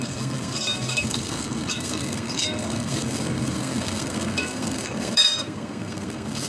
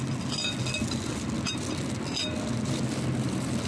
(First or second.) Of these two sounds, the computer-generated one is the first